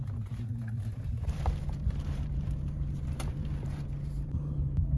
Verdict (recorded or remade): remade